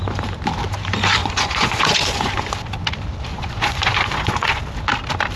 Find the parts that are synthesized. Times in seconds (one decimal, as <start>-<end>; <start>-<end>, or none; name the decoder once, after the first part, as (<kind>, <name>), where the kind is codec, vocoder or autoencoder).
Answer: 1.2-2.5 (vocoder, Vocos); 3.3-4.6